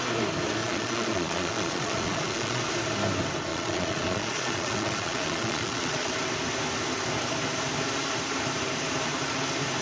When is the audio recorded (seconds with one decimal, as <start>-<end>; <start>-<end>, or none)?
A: 0.0-0.6; 2.6-3.5; 6.1-9.8